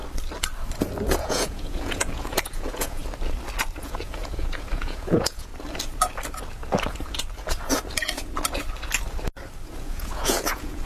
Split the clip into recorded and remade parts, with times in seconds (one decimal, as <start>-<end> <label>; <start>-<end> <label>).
0.0-1.2 recorded; 1.2-3.0 remade; 3.0-3.8 recorded; 3.8-5.5 remade; 5.5-9.8 recorded; 9.8-10.9 remade